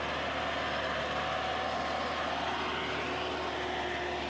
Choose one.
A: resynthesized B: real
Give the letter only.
B